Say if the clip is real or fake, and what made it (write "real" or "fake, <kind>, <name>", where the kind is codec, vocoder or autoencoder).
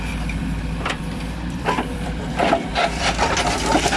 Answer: fake, vocoder, BigVGAN v2